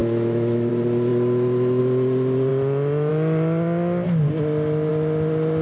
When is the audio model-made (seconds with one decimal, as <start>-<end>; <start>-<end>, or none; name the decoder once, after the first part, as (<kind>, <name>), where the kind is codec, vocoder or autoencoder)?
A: 0.0-0.7 (autoencoder, DAC-VAE)